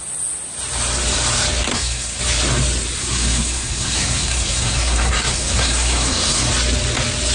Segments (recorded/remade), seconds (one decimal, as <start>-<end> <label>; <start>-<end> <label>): 0.0-1.7 recorded; 1.7-2.2 remade; 2.2-3.0 recorded; 3.0-6.5 remade; 6.5-7.3 recorded